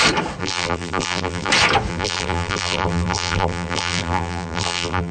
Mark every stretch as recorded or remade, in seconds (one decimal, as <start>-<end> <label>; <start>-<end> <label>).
0.0-0.4 recorded; 0.4-1.5 remade; 1.5-1.9 recorded; 1.9-5.1 remade